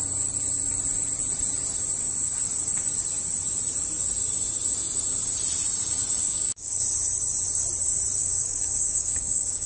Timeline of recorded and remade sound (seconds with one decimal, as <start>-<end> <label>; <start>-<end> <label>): 0.0-6.2 recorded; 6.2-6.8 remade; 6.8-8.2 recorded; 8.2-9.7 remade